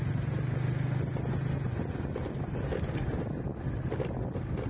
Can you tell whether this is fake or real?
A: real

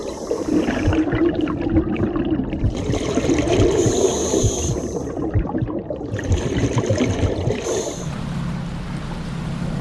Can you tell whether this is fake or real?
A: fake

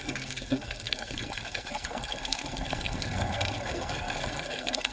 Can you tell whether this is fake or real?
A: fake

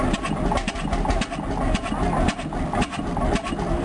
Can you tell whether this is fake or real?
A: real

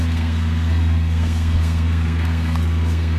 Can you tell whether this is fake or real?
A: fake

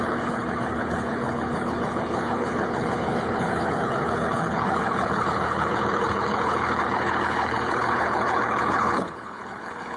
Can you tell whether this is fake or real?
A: fake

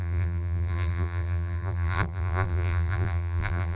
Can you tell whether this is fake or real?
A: fake